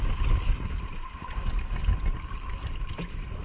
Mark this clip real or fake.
real